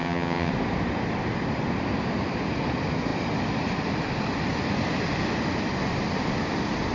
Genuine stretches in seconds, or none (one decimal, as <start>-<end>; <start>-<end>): 0.5-6.9